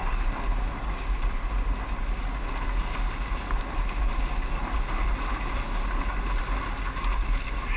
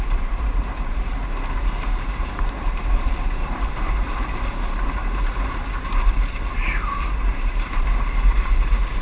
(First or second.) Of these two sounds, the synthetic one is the second